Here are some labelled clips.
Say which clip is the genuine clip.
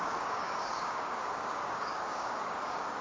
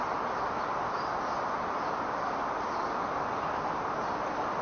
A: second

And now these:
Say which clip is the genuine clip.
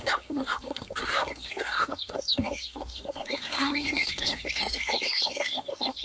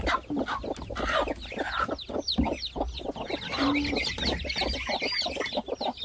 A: second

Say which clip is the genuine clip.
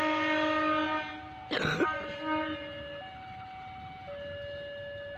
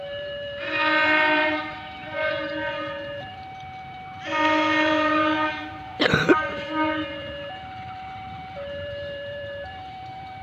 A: first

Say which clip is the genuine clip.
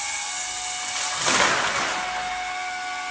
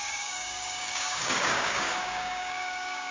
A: first